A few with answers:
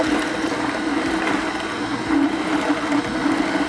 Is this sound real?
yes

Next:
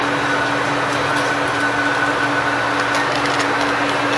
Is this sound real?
yes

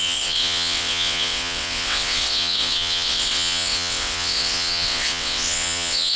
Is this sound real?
no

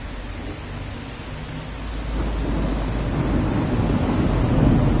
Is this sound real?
yes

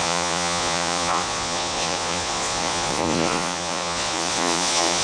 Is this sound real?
no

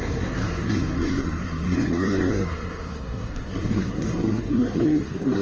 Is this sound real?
no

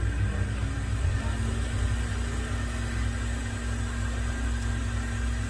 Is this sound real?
yes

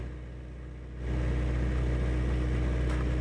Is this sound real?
yes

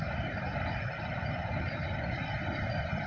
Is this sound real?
yes